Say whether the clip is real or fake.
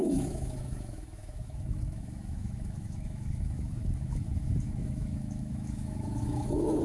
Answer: fake